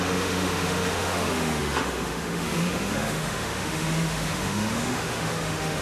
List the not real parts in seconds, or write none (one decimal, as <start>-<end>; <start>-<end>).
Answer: 0.0-5.8